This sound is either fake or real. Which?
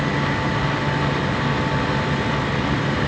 real